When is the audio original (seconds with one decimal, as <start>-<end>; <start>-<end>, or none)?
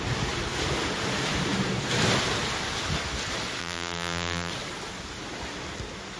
0.0-3.6; 4.5-6.2